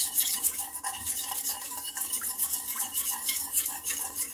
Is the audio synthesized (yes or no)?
yes